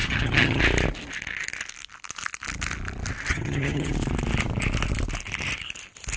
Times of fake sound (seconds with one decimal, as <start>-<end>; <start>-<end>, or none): 0.0-0.6; 3.3-3.9